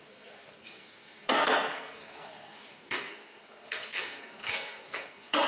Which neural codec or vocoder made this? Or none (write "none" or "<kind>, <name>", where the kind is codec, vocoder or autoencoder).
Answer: codec, SNAC